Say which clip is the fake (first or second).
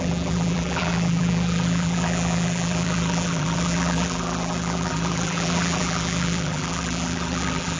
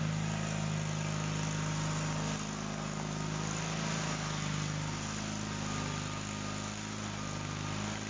first